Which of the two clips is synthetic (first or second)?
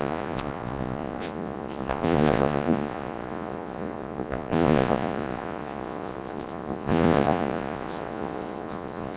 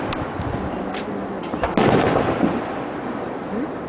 first